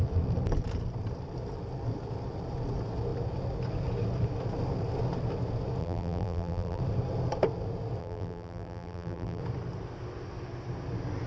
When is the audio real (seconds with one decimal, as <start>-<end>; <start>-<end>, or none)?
0.0-5.8; 6.8-8.0; 9.4-11.3